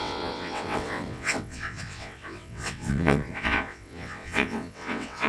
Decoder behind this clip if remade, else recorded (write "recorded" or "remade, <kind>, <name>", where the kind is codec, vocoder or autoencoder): remade, vocoder, WaveNeXt